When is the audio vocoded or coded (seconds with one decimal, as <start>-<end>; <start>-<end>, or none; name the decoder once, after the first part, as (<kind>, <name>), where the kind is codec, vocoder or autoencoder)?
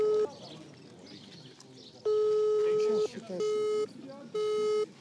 none